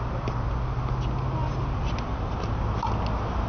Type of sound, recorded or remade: recorded